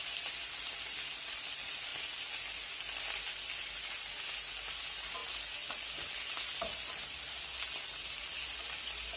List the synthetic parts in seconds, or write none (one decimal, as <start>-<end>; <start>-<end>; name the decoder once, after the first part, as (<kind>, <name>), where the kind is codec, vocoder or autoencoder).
none